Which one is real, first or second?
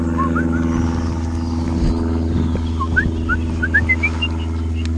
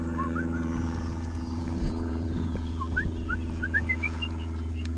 first